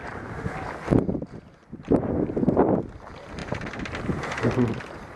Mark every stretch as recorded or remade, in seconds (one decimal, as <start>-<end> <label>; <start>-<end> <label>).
0.0-5.2 recorded

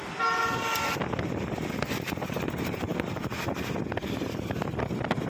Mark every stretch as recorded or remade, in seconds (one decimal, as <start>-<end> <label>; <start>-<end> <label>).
0.0-5.3 recorded

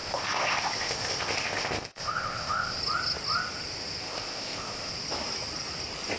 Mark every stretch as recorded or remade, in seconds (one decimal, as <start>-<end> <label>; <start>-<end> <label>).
0.0-2.8 remade; 2.8-4.0 recorded; 4.0-4.9 remade; 4.9-6.2 recorded